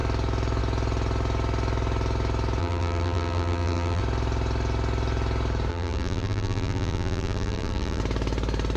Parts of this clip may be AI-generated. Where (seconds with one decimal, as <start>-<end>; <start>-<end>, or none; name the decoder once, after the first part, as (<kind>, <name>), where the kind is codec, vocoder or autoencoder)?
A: 2.6-4.0 (vocoder, BigVGAN v2); 5.7-8.0